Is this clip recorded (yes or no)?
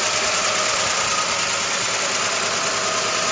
yes